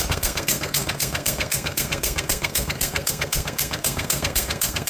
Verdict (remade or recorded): remade